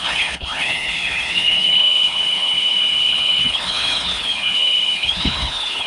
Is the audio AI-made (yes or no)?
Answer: yes